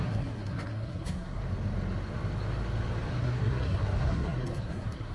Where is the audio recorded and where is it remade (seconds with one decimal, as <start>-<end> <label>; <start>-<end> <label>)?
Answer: 0.0-1.4 remade; 1.4-3.1 recorded; 3.1-5.1 remade